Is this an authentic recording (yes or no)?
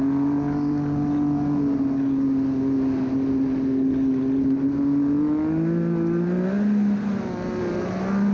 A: yes